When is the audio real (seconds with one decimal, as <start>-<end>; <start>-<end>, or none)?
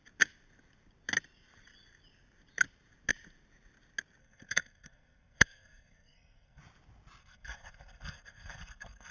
0.0-4.2; 6.6-7.2